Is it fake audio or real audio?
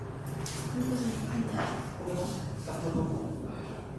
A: real